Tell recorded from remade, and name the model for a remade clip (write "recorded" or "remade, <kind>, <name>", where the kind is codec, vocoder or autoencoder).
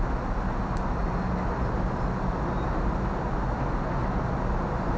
recorded